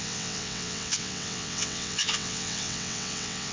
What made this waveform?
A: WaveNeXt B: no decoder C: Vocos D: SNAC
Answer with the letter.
A